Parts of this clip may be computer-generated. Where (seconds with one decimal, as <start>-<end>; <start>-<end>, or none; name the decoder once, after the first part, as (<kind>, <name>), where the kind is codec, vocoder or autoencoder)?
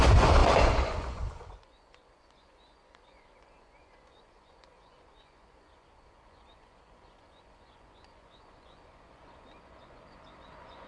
0.0-10.9 (vocoder, Vocos)